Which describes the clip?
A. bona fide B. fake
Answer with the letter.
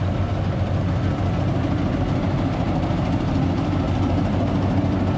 A